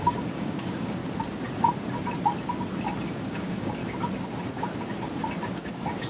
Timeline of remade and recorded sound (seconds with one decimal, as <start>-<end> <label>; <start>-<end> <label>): 0.0-1.0 remade; 1.0-3.2 recorded; 3.2-3.8 remade; 3.8-6.1 recorded